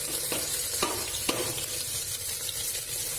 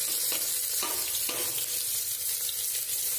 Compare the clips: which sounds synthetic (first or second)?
first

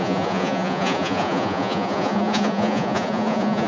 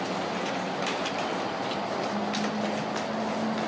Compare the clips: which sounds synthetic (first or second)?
first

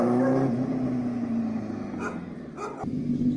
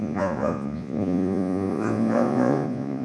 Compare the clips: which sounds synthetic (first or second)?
second